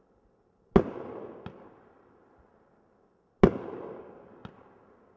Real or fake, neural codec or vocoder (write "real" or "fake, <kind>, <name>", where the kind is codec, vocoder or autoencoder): real